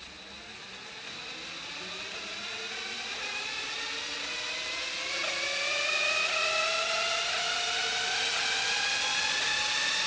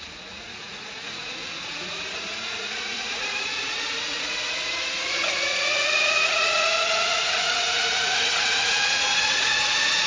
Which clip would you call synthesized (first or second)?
second